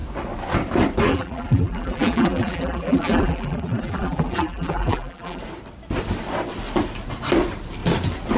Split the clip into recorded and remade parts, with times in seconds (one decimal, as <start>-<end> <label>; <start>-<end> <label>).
0.0-1.1 recorded; 1.1-5.4 remade; 5.4-8.4 recorded